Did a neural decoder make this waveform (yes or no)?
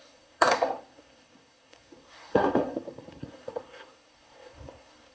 yes